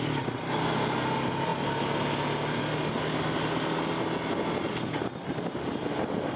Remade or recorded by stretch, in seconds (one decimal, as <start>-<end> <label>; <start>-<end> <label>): 0.0-6.4 recorded